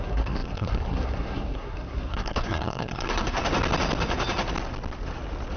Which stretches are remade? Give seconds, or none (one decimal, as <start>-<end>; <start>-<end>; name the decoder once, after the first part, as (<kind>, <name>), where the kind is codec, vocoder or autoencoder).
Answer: 0.0-3.4 (codec, SNAC)